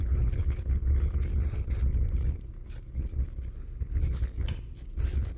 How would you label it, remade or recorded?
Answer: recorded